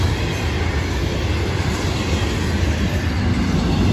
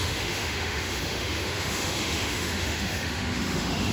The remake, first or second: second